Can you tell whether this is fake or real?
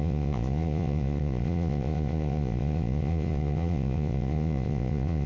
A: fake